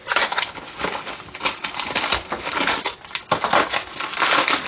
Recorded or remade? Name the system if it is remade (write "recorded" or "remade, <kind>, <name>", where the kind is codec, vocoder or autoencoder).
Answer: recorded